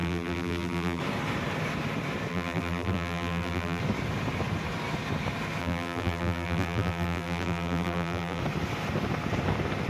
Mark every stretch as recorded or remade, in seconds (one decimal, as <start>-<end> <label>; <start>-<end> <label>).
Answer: 0.0-1.0 remade; 1.0-2.3 recorded; 2.3-3.8 remade; 3.8-5.6 recorded; 5.6-8.4 remade; 8.4-9.9 recorded